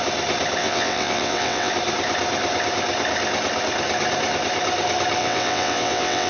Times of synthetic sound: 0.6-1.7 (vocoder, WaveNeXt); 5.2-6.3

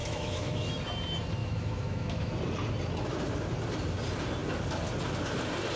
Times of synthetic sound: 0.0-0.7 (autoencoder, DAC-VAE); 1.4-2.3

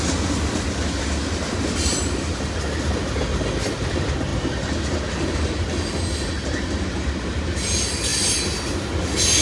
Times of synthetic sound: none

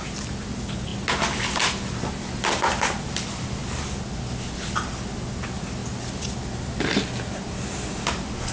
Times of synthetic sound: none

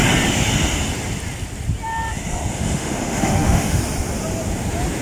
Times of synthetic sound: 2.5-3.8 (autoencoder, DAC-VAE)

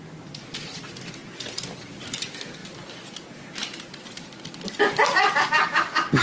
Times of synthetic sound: none